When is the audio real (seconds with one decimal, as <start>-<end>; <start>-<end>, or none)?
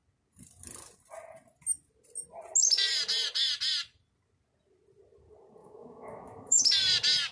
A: 0.0-5.6; 6.6-7.3